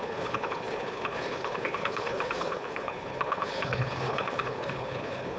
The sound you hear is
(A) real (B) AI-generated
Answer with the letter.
B